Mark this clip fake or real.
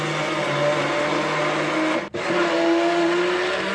real